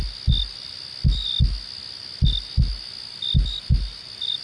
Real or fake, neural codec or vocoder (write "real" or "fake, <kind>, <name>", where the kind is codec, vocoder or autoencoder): real